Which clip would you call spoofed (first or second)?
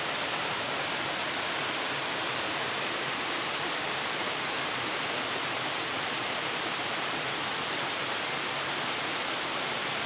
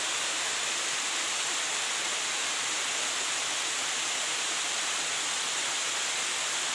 first